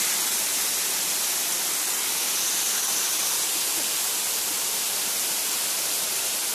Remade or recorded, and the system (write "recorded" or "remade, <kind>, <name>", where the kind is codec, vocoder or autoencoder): recorded